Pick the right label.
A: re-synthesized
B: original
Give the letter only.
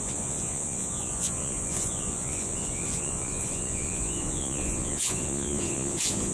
A